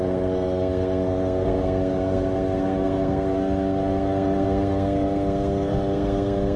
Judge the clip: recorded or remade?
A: remade